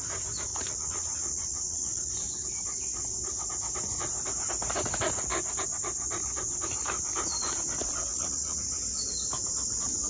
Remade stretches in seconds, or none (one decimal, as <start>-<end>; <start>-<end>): 0.5-2.1; 8.1-8.6